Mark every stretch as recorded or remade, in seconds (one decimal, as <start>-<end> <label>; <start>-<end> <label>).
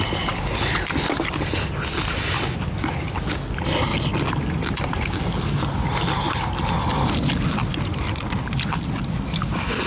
0.0-9.9 recorded